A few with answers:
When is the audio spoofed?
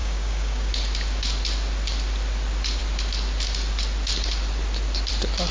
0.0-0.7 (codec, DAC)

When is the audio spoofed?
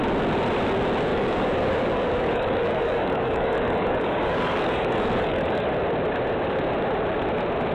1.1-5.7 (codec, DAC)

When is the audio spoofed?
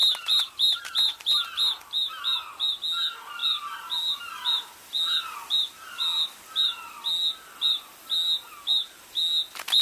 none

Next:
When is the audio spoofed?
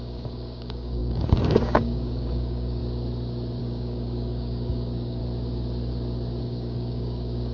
0.0-2.8 (codec, DAC); 3.6-5.2; 6.4-7.5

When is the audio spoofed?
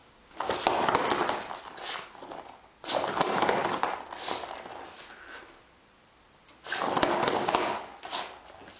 0.0-0.5 (codec, DAC)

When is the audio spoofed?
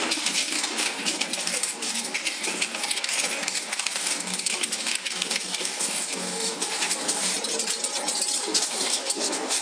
0.0-7.3 (codec, DAC); 8.4-9.6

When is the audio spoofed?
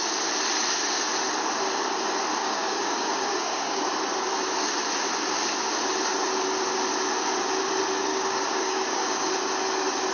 2.4-3.8 (codec, DAC); 8.1-9.3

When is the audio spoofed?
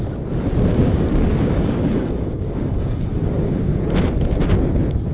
0.7-3.8 (codec, DAC)